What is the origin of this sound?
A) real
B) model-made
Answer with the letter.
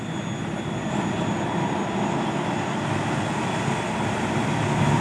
A